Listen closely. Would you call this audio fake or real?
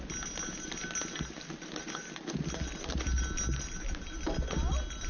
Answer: real